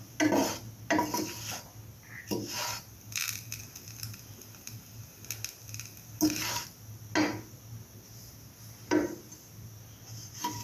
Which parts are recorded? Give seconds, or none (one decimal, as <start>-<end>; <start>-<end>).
0.0-10.6